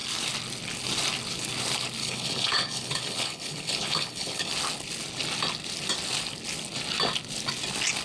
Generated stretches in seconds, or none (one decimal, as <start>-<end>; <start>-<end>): 2.0-4.5